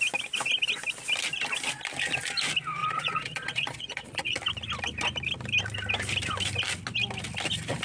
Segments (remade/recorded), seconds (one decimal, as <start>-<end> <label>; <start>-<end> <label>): 0.0-2.8 recorded; 2.8-4.3 remade; 4.3-7.8 recorded